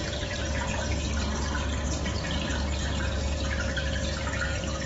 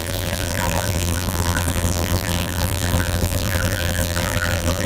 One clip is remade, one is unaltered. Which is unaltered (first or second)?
first